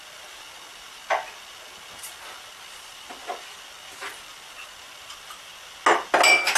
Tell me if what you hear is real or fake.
real